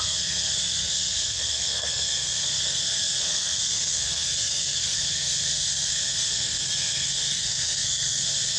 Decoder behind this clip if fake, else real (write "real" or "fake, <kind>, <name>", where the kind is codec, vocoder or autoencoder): fake, codec, SNAC